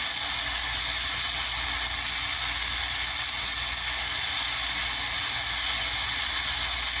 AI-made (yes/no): no